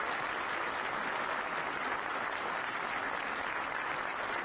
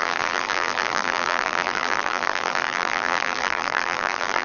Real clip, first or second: first